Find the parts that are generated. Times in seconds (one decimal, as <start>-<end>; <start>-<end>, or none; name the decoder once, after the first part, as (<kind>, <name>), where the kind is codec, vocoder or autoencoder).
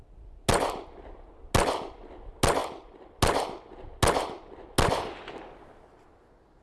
2.6-3.2 (vocoder, BigVGAN v2)